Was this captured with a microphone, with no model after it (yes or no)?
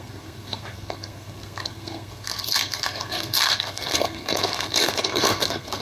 no